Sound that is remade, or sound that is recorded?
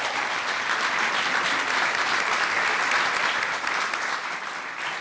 recorded